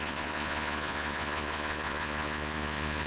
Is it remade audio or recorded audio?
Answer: remade